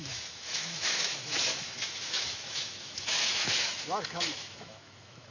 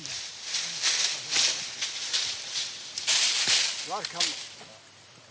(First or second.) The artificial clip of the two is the first